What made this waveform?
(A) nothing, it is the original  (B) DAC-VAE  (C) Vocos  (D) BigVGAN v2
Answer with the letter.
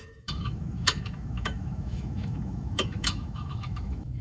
B